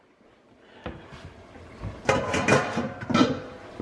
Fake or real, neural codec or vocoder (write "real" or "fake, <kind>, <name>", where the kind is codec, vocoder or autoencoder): real